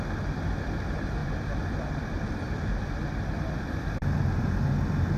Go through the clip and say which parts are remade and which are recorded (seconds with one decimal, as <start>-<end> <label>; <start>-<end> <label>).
0.0-1.2 recorded; 1.2-4.3 remade; 4.3-5.2 recorded